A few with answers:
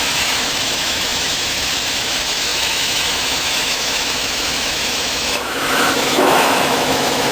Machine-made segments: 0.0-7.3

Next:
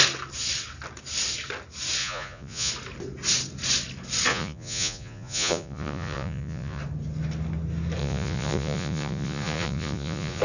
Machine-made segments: 2.0-2.7; 4.3-6.8; 8.0-10.4

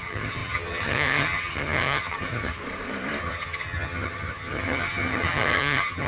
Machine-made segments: 0.0-2.6; 3.2-6.1

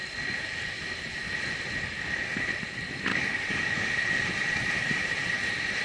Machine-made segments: 3.1-3.8

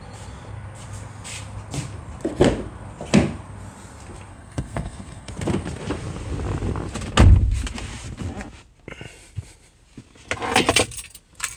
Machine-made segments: 4.3-5.3

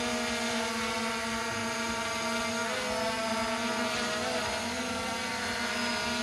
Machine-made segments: none

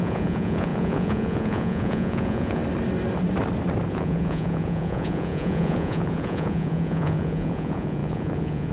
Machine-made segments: 0.0-2.6; 3.9-8.7